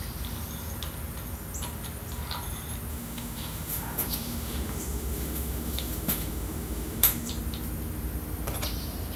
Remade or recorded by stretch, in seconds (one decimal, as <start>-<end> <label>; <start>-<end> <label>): 0.0-2.9 recorded; 2.9-7.3 remade; 7.3-9.2 recorded